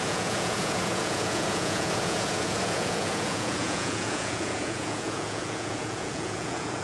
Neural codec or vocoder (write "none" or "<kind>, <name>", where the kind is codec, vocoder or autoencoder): vocoder, Vocos